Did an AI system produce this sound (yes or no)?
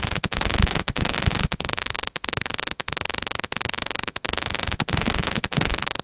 yes